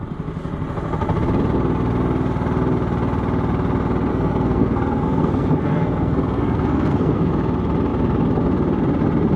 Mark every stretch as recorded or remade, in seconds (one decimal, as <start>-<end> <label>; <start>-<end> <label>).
0.0-4.1 recorded; 4.1-7.3 remade; 7.3-9.4 recorded